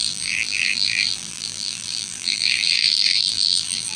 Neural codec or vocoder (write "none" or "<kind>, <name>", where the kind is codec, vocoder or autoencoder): vocoder, BigVGAN v2